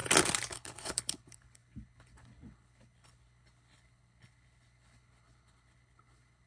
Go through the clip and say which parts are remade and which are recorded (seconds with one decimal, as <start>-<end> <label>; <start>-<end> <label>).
0.0-0.5 recorded; 0.5-6.5 remade